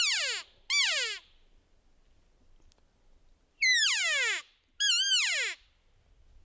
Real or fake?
real